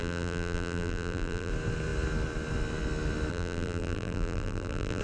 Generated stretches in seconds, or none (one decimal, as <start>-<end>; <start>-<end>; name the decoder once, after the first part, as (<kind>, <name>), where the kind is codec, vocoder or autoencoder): 0.0-1.5 (vocoder, BigVGAN v2); 3.3-5.0